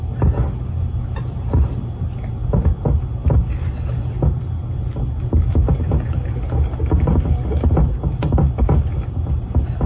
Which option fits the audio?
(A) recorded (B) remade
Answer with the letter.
A